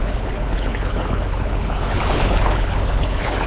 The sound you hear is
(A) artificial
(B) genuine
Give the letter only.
A